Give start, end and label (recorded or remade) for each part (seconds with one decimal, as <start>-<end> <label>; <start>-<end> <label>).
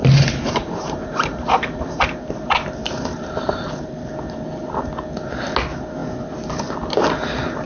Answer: 0.0-2.2 remade; 2.2-2.8 recorded; 2.8-3.9 remade; 3.9-7.7 recorded